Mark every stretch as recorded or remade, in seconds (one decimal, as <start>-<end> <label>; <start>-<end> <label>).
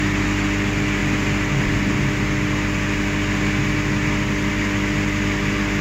0.0-5.8 recorded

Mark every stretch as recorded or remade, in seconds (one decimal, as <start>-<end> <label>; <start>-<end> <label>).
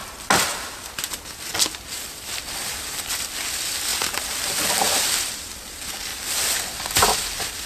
0.0-1.7 recorded; 1.7-3.9 remade; 3.9-4.7 recorded; 4.7-6.1 remade; 6.1-6.7 recorded; 6.7-7.7 remade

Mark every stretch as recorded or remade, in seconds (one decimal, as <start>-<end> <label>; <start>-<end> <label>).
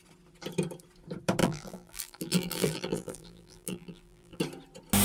0.0-1.4 recorded; 1.4-4.4 remade; 4.4-5.0 recorded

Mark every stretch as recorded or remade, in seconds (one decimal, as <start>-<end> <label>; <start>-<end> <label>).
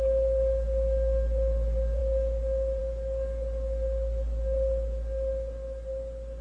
0.0-6.4 recorded